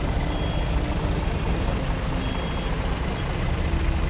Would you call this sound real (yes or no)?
yes